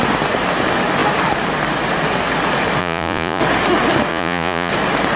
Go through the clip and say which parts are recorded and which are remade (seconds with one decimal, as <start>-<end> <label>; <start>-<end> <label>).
0.0-2.8 recorded; 2.8-3.4 remade; 3.4-4.1 recorded; 4.1-4.7 remade; 4.7-5.2 recorded